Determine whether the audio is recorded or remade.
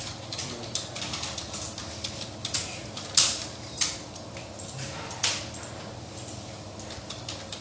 recorded